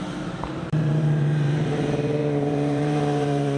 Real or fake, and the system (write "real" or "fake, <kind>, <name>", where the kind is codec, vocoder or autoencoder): fake, vocoder, BigVGAN v2